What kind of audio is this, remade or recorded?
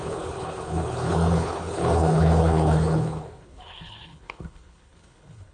remade